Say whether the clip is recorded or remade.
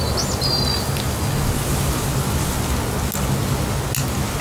recorded